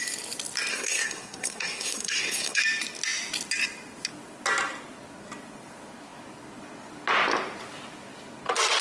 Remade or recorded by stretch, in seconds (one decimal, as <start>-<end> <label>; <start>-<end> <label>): 0.0-0.7 recorded; 0.7-2.6 remade; 2.6-8.8 recorded